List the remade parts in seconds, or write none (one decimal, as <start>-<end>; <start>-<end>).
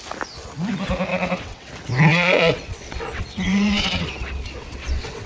1.1-1.7; 2.1-5.3